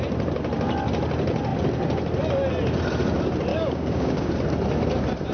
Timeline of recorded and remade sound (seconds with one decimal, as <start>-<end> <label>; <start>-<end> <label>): 0.0-3.5 recorded; 3.5-4.3 remade; 4.3-5.3 recorded